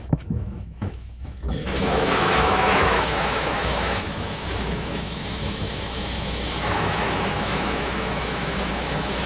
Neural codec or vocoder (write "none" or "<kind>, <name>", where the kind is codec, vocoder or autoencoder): autoencoder, DAC-VAE